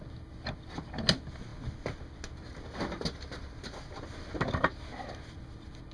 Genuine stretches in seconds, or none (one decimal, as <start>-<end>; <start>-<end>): 0.0-5.9